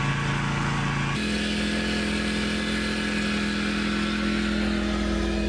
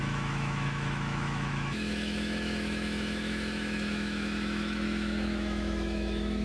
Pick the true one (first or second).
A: first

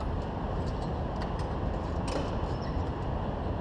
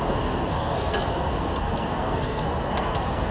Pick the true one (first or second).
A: first